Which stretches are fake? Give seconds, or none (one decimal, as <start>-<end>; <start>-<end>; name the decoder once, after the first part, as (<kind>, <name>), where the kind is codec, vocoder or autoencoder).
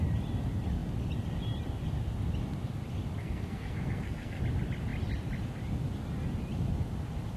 3.2-4.4 (codec, SNAC)